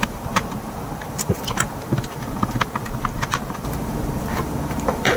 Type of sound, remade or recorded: remade